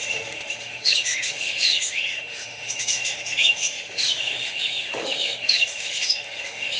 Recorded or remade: remade